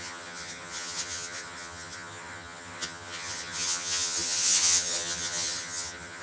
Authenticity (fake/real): fake